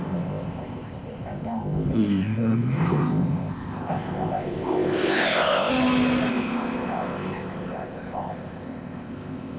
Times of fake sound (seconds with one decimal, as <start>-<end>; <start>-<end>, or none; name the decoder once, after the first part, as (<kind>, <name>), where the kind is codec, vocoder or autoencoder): 0.0-5.7 (codec, ZipCodec); 6.3-9.6